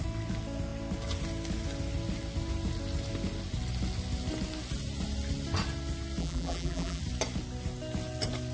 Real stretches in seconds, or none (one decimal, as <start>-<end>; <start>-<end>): 0.0-6.2; 7.0-8.5